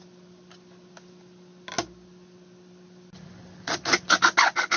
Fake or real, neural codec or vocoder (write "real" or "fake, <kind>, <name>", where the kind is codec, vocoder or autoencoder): real